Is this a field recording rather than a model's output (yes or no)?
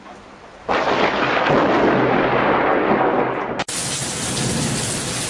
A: yes